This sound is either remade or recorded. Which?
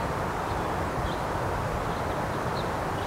recorded